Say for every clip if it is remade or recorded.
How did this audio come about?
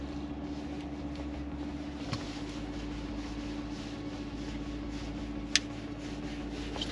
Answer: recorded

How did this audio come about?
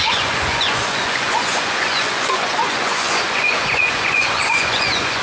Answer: remade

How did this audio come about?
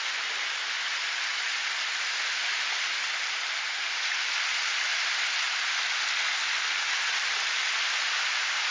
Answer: recorded